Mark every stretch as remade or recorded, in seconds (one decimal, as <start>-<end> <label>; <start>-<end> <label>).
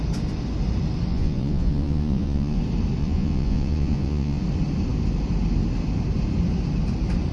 0.0-1.1 recorded; 1.1-2.6 remade; 2.6-3.0 recorded; 3.0-4.4 remade; 4.4-7.3 recorded